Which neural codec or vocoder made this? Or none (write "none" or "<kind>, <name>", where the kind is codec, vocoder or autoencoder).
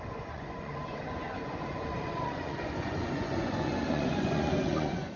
vocoder, Vocos